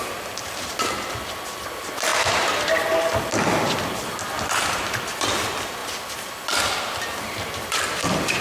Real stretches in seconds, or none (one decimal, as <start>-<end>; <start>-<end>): 0.0-8.4